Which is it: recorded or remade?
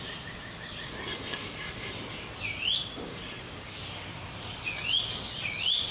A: recorded